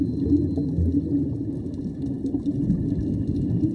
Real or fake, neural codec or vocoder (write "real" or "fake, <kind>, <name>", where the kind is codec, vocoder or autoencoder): real